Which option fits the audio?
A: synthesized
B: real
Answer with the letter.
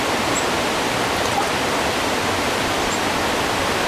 B